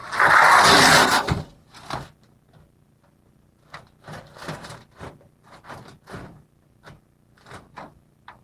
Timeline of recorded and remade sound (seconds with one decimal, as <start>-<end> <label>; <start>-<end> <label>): 0.0-8.4 recorded